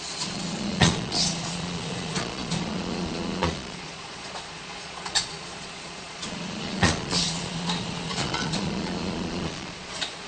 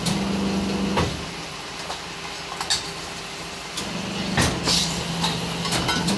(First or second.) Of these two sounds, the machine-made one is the first